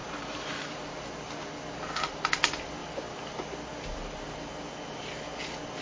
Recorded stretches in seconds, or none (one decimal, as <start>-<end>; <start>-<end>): 0.9-5.8